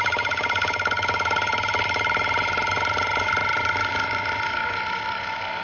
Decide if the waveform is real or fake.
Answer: fake